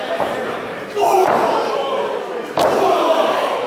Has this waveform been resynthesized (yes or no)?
yes